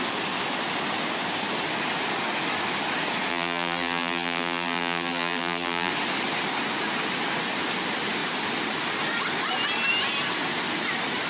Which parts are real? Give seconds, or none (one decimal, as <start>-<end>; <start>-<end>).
0.0-3.3; 5.9-11.3